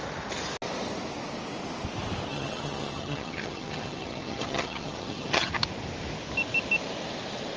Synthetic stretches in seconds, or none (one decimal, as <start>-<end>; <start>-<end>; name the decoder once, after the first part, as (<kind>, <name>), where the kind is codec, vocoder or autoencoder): 2.3-5.5 (vocoder, HiFi-GAN)